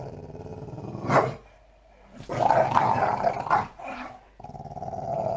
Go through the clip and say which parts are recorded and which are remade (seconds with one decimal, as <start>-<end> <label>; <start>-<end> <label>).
0.0-5.4 recorded